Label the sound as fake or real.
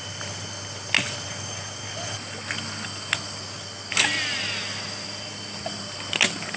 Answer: real